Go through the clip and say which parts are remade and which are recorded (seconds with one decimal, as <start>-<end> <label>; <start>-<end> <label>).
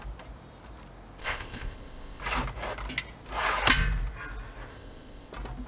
0.0-1.2 recorded; 1.2-2.2 remade; 2.2-4.7 recorded; 4.7-5.3 remade; 5.3-5.7 recorded